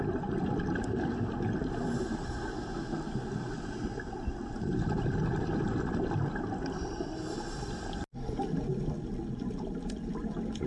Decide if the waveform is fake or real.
real